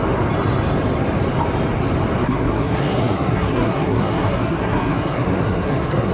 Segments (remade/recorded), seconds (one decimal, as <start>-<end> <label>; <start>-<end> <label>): 0.0-2.2 recorded; 2.2-6.1 remade